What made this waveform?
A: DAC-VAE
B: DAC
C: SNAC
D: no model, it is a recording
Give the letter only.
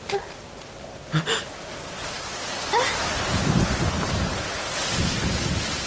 D